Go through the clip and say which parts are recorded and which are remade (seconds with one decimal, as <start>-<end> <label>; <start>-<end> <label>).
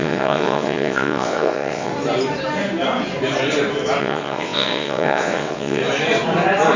0.0-1.9 remade; 1.9-4.0 recorded; 4.0-5.8 remade; 5.8-6.8 recorded